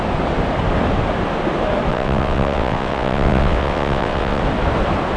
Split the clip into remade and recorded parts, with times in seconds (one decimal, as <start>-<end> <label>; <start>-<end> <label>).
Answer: 0.0-1.9 recorded; 1.9-4.4 remade; 4.4-5.2 recorded